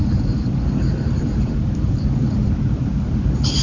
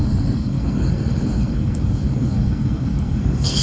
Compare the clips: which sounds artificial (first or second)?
second